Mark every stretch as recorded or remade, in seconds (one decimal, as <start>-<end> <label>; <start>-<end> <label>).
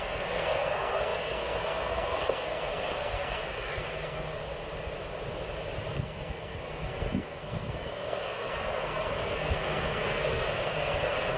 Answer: 0.0-4.4 remade; 4.4-5.9 recorded; 5.9-11.4 remade